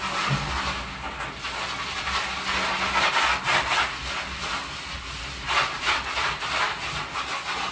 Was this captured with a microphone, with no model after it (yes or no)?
yes